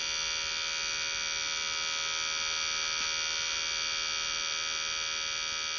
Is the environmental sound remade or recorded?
recorded